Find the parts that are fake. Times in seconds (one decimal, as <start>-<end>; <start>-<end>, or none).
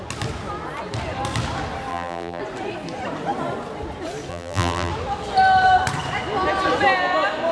1.9-2.4; 4.3-4.9